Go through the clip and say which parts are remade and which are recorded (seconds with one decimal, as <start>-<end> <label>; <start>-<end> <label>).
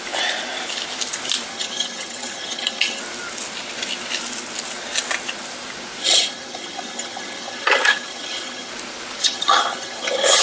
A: 0.0-1.5 recorded; 1.5-3.0 remade; 3.0-6.0 recorded; 6.0-8.7 remade; 8.7-9.2 recorded; 9.2-10.4 remade